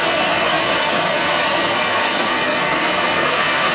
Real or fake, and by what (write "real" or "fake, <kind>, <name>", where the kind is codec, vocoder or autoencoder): fake, codec, SNAC